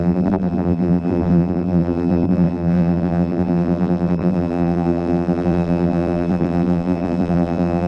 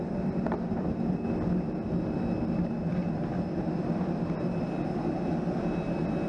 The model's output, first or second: first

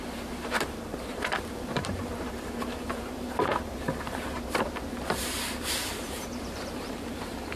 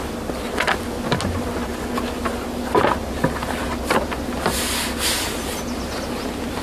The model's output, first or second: first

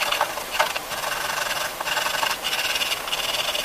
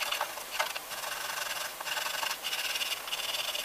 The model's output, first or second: first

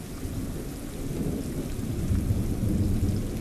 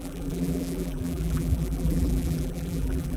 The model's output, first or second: second